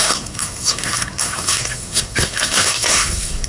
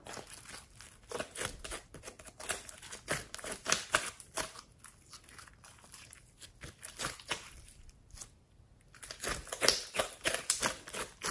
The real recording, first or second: second